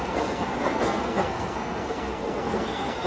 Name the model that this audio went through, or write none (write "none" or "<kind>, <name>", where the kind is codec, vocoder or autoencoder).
codec, SNAC